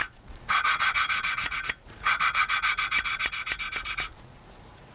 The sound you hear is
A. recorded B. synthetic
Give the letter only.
B